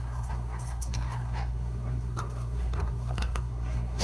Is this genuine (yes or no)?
no